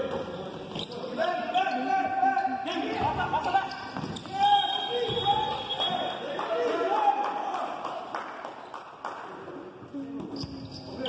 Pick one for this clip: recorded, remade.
recorded